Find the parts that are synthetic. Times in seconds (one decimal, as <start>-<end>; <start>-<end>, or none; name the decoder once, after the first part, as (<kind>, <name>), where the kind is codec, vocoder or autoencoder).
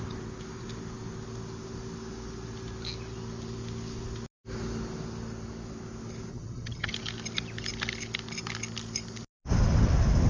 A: 6.3-6.9 (vocoder, HiFi-GAN)